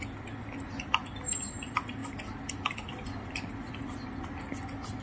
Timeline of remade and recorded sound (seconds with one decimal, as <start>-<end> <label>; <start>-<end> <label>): 0.0-5.0 recorded